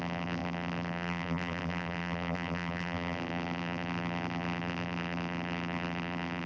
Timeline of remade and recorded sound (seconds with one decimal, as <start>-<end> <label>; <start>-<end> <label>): 0.0-6.5 remade